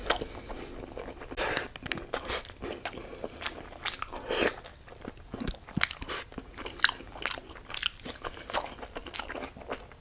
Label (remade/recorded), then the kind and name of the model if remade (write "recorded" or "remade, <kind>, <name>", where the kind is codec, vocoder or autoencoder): recorded